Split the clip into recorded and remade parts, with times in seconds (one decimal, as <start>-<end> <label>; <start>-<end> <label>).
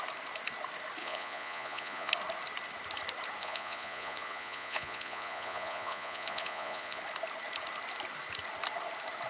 0.0-1.0 recorded; 1.0-2.1 remade; 2.1-3.4 recorded; 3.4-7.0 remade; 7.0-9.3 recorded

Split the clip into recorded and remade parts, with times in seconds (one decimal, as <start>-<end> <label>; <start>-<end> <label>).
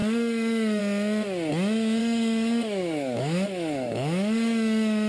0.0-0.8 remade; 0.8-2.0 recorded; 2.0-5.1 remade